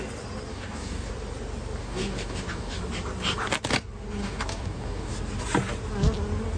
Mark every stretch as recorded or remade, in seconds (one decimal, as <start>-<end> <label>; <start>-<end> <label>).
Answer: 0.0-0.5 recorded; 0.5-1.1 remade; 1.1-1.8 recorded; 1.8-2.8 remade; 2.8-4.2 recorded; 4.2-5.1 remade; 5.1-6.6 recorded